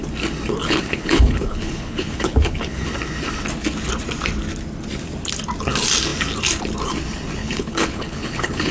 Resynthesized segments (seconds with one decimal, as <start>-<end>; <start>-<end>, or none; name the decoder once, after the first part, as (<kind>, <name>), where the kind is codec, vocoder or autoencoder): 0.6-2.9 (codec, HILCodec); 7.4-8.7